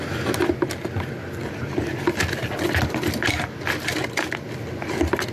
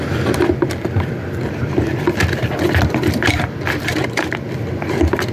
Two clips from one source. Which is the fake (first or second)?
second